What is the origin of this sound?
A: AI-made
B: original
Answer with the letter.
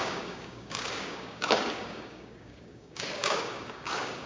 A